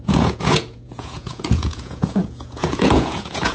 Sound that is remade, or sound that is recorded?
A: remade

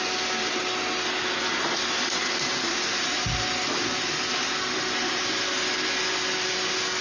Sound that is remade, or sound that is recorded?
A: recorded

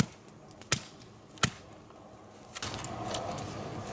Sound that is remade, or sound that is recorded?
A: recorded